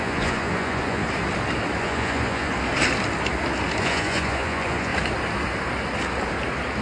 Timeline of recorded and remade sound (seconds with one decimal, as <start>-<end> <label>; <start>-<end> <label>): 0.0-1.0 remade; 1.0-1.8 recorded; 1.8-2.5 remade; 2.5-3.8 recorded; 3.8-4.9 remade; 4.9-6.8 recorded